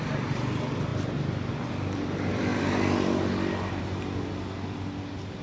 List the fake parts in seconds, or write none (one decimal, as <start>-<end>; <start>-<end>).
none